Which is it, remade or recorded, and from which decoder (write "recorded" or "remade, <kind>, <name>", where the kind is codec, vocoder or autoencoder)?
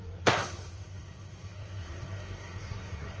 remade, codec, SNAC